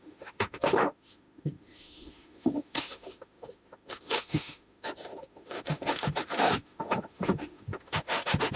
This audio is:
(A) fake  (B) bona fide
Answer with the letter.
A